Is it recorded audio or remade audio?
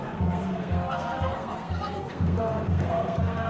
remade